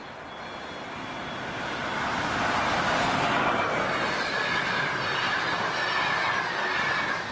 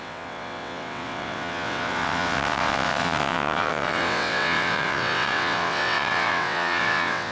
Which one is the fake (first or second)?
second